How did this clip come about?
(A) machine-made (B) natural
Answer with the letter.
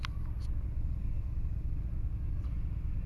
B